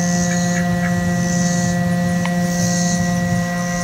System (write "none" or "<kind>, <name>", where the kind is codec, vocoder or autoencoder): none